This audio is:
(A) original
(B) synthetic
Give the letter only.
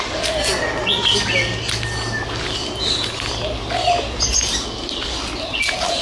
A